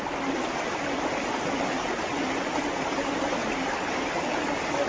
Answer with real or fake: real